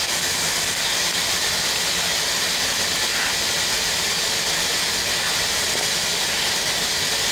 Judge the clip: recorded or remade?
recorded